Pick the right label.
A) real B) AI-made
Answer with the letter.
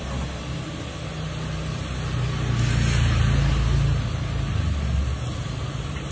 A